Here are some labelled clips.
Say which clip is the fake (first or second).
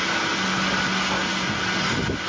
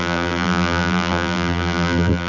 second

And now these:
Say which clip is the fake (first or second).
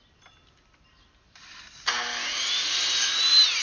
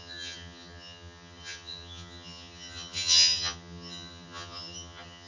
second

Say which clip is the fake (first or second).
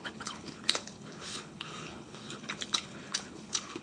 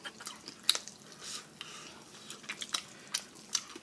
first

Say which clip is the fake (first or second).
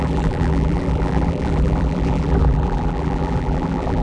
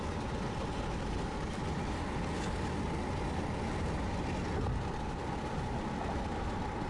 first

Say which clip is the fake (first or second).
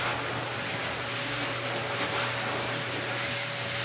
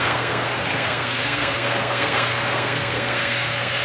second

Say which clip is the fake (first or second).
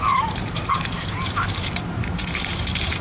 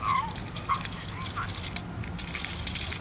first